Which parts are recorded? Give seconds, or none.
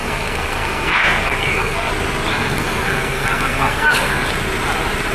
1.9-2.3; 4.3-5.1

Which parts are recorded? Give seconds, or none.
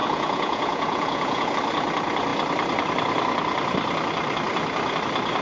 1.5-5.4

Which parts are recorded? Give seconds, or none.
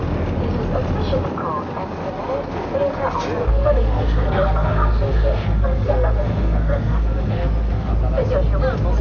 0.0-3.4; 7.9-9.0